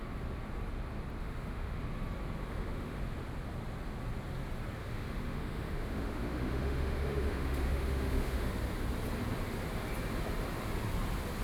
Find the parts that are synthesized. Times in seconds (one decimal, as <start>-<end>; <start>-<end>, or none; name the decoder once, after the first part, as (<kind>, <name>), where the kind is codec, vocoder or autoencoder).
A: 1.2-1.8 (autoencoder, DAC-VAE); 2.4-3.0; 4.8-8.5